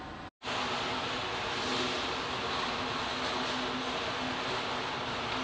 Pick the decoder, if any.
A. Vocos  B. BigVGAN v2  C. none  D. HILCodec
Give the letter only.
C